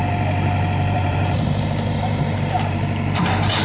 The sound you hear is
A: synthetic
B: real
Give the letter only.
A